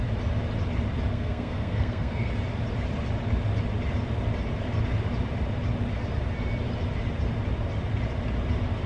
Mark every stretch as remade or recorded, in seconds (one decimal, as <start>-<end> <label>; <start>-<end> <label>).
0.0-1.1 recorded; 1.1-2.3 remade; 2.3-8.9 recorded